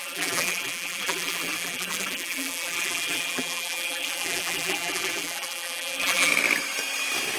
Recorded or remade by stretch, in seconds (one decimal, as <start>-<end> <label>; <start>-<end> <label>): 0.0-6.3 remade; 6.3-7.4 recorded